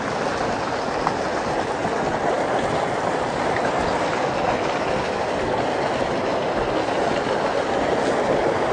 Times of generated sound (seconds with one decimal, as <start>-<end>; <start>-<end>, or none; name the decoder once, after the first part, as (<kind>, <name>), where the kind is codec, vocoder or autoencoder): none